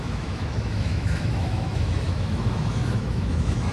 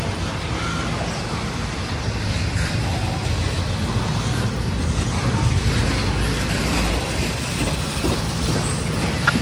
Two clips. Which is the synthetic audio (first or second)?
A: first